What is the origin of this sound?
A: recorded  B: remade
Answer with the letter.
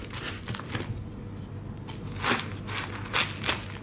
A